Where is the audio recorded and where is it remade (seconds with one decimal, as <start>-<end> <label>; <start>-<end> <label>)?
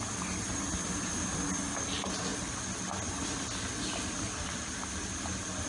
0.0-2.3 recorded; 2.3-5.7 remade